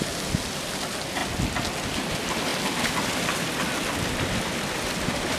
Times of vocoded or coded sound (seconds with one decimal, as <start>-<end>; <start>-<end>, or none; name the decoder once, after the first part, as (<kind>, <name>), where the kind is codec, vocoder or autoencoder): none